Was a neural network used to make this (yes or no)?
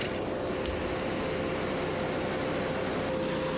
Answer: no